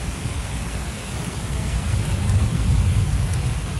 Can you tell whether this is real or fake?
fake